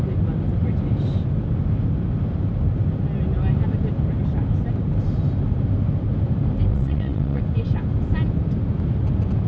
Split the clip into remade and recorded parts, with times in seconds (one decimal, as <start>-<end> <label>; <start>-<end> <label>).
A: 0.0-6.7 recorded; 6.7-7.4 remade; 7.4-9.5 recorded